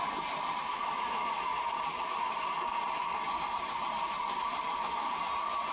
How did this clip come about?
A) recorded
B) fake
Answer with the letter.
B